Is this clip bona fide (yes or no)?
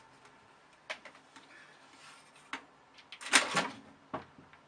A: yes